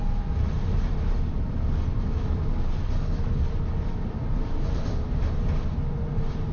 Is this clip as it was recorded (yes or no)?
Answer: yes